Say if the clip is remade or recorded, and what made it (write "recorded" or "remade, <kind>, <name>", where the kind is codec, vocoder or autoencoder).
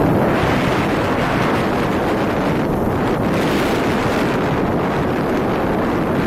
recorded